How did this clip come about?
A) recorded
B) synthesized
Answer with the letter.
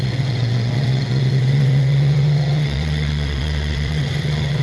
B